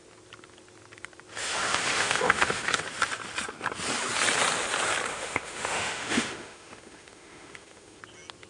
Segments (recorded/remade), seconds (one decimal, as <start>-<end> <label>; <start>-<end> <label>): 0.0-1.4 recorded; 1.4-2.8 remade; 2.8-5.1 recorded; 5.1-8.0 remade; 8.0-8.5 recorded